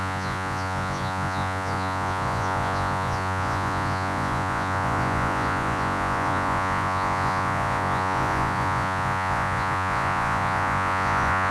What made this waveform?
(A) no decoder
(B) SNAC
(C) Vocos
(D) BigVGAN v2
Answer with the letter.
C